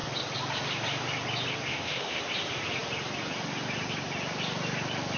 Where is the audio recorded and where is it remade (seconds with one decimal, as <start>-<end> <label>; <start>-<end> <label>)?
0.0-1.7 recorded; 1.7-2.2 remade; 2.2-5.2 recorded